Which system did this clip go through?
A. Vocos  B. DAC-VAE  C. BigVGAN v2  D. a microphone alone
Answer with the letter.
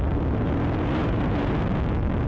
C